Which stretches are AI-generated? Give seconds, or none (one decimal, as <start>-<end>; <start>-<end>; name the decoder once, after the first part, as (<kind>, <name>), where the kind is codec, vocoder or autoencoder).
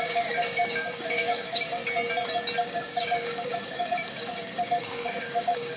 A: 0.0-1.8 (codec, DAC); 2.6-5.8